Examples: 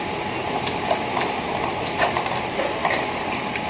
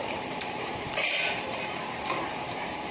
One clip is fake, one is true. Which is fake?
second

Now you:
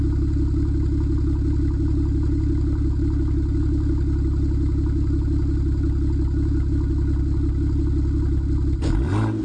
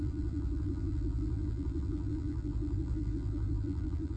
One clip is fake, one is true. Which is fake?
second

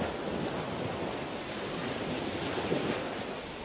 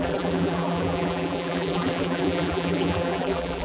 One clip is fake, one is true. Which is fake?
second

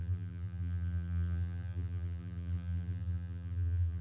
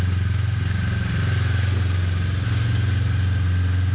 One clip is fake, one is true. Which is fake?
first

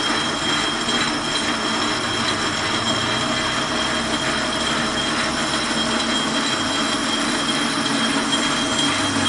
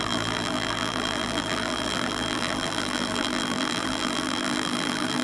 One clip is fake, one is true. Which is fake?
second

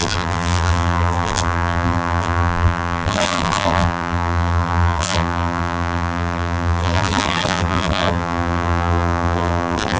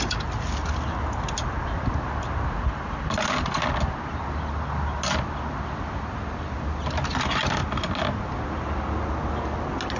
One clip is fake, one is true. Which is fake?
first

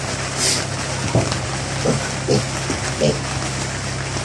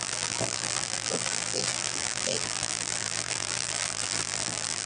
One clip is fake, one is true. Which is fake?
second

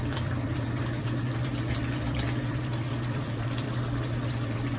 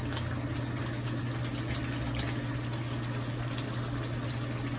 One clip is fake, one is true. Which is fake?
first